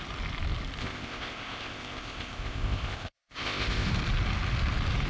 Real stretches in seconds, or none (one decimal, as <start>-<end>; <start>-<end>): 0.0-0.8; 3.9-5.1